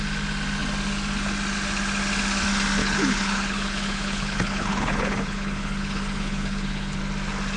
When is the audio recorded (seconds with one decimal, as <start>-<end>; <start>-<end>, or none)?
0.0-2.8; 7.0-7.6